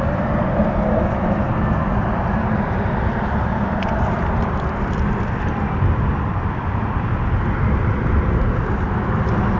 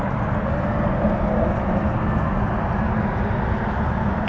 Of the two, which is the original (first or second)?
second